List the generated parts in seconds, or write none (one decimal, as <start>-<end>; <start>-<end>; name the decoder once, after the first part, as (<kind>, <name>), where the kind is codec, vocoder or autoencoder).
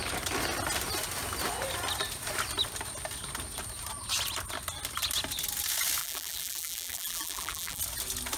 6.0-7.8 (vocoder, BigVGAN v2)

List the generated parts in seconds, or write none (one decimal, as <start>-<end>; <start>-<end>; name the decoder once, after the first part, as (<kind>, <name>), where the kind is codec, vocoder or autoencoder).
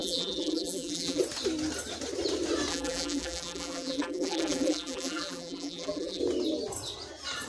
0.0-1.2 (vocoder, BigVGAN v2); 2.7-6.2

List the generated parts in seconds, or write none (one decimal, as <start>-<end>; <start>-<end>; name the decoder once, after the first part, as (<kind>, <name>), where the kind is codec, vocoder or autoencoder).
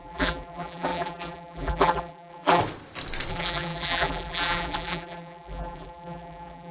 0.0-2.6 (vocoder, BigVGAN v2); 3.3-6.7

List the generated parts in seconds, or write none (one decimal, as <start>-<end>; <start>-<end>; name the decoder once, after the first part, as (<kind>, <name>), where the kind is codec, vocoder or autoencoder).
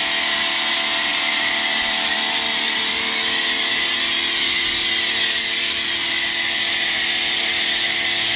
1.1-3.0 (vocoder, BigVGAN v2)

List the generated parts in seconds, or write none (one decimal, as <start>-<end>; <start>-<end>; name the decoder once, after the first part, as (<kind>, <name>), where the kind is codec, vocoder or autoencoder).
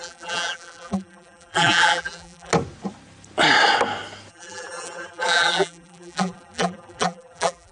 0.0-2.5 (vocoder, BigVGAN v2); 4.3-7.7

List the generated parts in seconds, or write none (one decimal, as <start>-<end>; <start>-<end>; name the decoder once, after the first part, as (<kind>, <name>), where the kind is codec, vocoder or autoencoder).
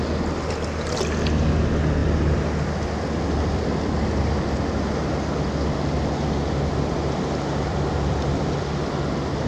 none